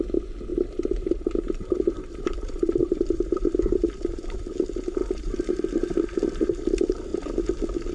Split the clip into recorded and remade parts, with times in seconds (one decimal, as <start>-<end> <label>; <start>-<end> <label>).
0.0-0.5 recorded; 0.5-4.4 remade; 4.4-5.0 recorded; 5.0-6.1 remade; 6.1-7.9 recorded